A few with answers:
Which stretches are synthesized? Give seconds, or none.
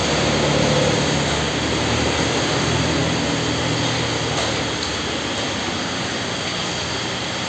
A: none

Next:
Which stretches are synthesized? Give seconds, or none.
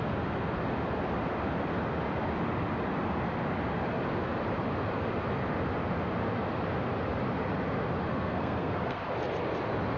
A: 8.1-9.0 (codec, SNAC)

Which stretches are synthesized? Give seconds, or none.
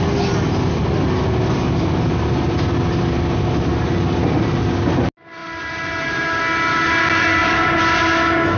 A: 5.4-6.2 (vocoder, BigVGAN v2); 7.4-8.0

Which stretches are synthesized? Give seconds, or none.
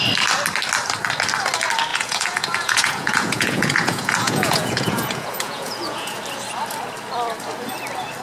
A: 1.9-6.2 (vocoder, Vocos)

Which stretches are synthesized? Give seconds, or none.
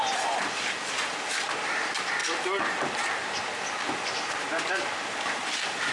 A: none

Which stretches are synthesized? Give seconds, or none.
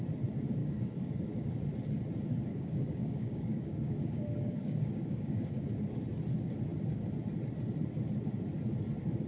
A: 0.6-1.7 (codec, DAC); 2.5-5.5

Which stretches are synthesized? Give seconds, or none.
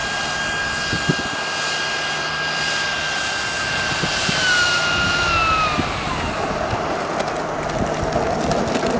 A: none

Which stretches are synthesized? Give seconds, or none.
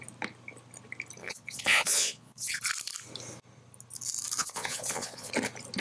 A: 1.2-2.6 (vocoder, Vocos); 4.4-5.3